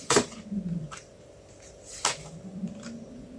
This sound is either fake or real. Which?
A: fake